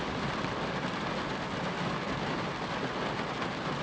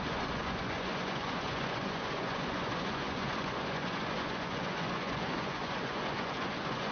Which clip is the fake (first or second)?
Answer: second